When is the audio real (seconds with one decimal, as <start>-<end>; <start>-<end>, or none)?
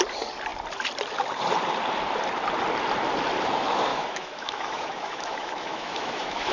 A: 0.0-3.9